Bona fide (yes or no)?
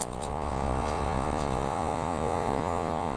no